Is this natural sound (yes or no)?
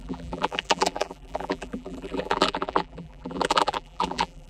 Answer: no